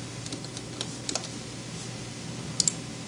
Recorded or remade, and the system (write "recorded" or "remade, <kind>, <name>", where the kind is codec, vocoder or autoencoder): recorded